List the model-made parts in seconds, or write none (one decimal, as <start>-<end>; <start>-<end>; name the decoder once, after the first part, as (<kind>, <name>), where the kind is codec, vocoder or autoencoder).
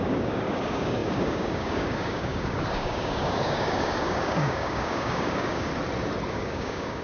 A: 0.0-5.7 (codec, DAC); 6.3-7.0